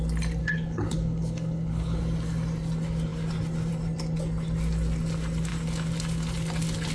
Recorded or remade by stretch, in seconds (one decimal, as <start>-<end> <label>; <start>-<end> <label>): 0.0-0.4 recorded; 0.4-2.0 remade; 2.0-6.9 recorded